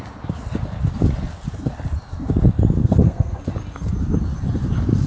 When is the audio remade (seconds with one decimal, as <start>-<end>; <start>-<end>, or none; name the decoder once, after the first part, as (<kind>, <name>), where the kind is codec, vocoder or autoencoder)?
2.8-3.4 (codec, SNAC)